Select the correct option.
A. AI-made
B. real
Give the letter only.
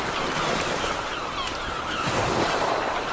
A